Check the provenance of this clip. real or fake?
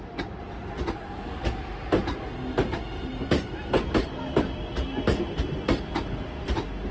real